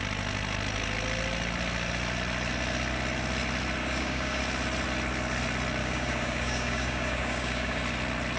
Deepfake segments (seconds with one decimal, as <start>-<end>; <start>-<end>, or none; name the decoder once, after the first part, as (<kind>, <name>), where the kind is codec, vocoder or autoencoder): 3.8-4.4 (codec, DAC); 5.8-7.8